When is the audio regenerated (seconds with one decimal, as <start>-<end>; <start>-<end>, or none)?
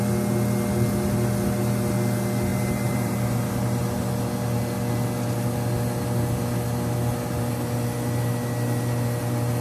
2.5-4.1